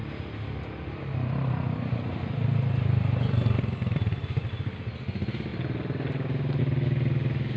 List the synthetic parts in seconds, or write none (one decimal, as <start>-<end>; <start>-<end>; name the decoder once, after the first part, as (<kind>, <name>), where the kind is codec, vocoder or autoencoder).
none